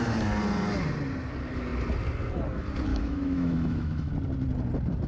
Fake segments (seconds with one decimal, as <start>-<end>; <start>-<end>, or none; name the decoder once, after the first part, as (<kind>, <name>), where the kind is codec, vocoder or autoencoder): 2.9-4.1 (autoencoder, DAC-VAE)